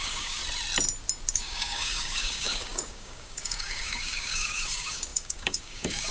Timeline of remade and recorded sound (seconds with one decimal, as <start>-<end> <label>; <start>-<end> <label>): 0.0-0.4 remade; 0.4-1.3 recorded; 1.3-6.1 remade